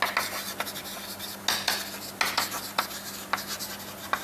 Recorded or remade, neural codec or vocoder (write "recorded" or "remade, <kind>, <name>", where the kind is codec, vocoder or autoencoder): recorded